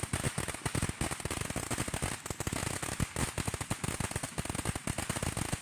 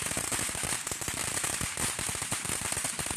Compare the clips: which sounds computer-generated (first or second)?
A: second